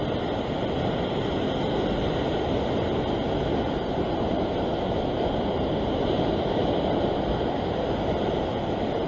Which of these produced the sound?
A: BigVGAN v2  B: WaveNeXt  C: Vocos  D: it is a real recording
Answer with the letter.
D